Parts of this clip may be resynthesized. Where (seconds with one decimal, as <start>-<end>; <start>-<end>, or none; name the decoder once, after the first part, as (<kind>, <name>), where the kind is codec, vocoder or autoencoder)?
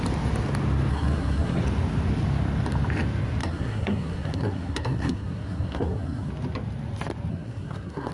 0.9-1.6 (codec, SNAC); 3.4-6.3; 7.3-8.1